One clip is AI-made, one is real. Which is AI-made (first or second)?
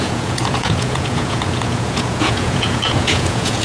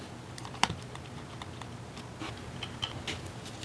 first